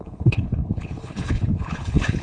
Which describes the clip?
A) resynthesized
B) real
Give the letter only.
A